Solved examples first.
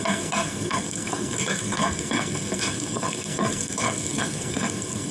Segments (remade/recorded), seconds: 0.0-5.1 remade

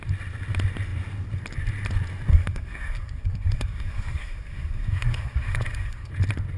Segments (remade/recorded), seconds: 0.0-2.3 recorded; 2.3-6.1 remade; 6.1-6.6 recorded

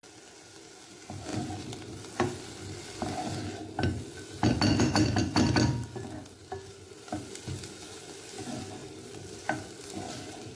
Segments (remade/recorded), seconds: 0.0-10.6 recorded

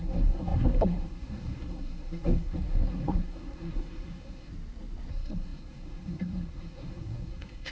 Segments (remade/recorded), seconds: 0.0-4.5 remade; 4.5-5.1 recorded; 5.1-7.7 remade

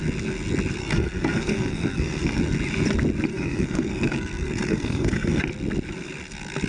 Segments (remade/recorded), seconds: 0.0-0.8 recorded; 0.8-2.4 remade; 2.4-3.3 recorded; 3.3-5.4 remade; 5.4-6.7 recorded

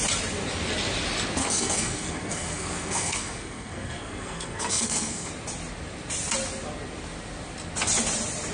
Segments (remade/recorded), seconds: 0.0-1.4 recorded; 1.4-5.3 remade; 5.3-8.5 recorded